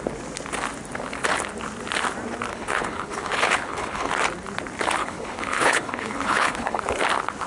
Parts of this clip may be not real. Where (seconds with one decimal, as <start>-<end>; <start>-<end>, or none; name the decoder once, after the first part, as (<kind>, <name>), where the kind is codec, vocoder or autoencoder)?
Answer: 2.5-4.1 (codec, HILCodec); 5.0-6.8